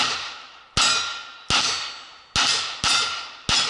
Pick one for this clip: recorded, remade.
recorded